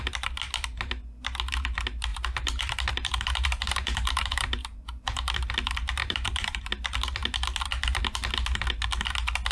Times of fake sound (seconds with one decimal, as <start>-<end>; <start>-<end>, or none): 2.1-5.3; 6.0-6.6